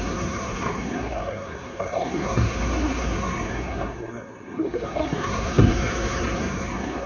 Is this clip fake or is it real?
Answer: fake